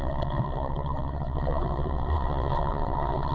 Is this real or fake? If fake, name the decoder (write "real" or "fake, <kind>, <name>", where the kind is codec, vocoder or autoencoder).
fake, vocoder, WaveNeXt